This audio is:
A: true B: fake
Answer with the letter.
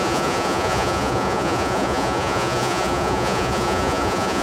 B